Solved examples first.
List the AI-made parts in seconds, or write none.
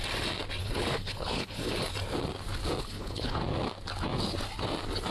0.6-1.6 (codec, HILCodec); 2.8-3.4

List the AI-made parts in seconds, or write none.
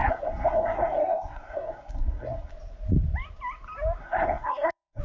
0.0-2.5 (codec, SNAC); 4.0-5.0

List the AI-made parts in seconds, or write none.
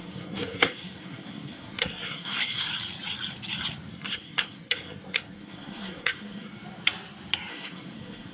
0.0-2.7 (codec, SNAC); 3.9-6.5; 7.5-8.3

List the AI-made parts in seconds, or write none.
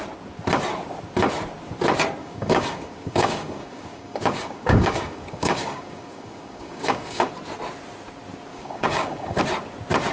2.2-7.3 (codec, DAC); 8.5-9.4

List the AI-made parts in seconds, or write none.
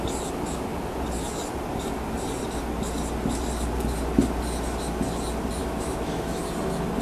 5.6-6.4 (autoencoder, DAC-VAE)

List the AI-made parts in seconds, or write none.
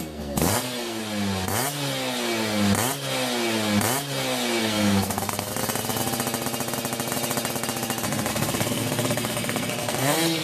0.0-1.0 (codec, SNAC); 4.6-5.5; 8.3-10.4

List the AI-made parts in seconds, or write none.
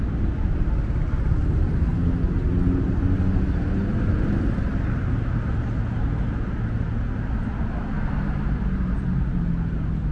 none